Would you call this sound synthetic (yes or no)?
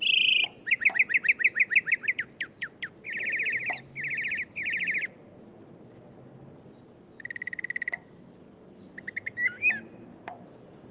no